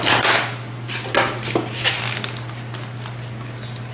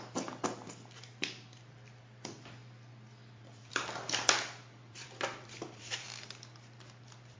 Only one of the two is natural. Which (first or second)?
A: first